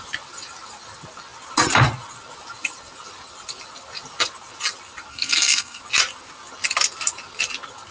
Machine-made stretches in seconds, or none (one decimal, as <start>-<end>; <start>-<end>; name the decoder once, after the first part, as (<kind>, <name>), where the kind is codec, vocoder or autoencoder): 5.1-5.8 (codec, SNAC)